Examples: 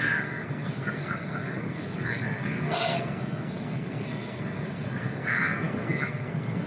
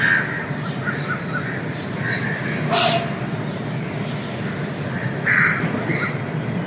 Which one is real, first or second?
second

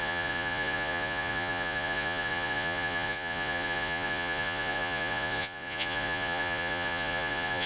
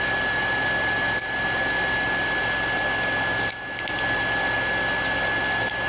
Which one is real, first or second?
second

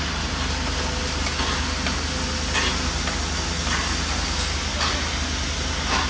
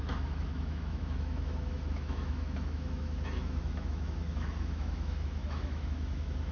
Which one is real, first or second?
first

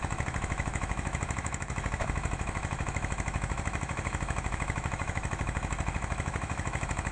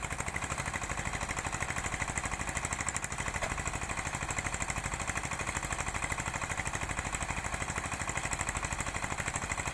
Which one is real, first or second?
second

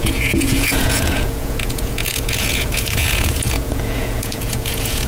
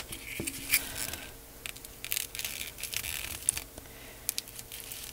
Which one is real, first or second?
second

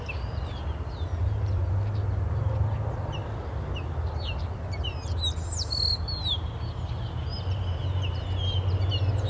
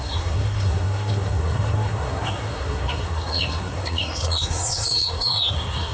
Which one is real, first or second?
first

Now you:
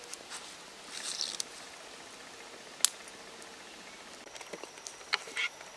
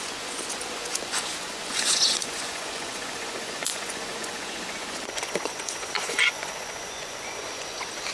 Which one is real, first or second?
first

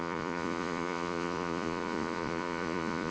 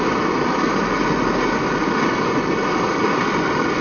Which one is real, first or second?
second